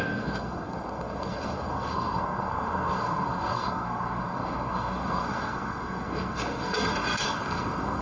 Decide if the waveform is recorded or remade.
remade